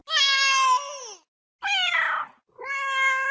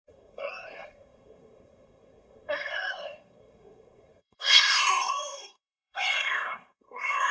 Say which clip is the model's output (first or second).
second